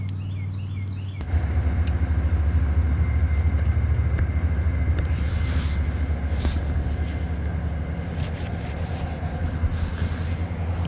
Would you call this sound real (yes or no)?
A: yes